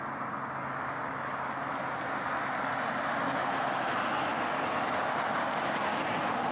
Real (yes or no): yes